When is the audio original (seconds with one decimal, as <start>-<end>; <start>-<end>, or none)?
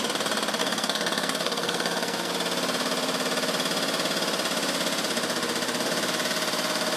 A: 0.0-0.6; 2.3-7.0